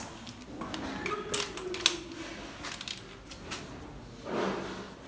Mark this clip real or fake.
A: real